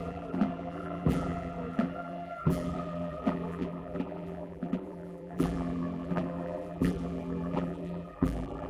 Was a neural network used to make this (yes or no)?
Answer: yes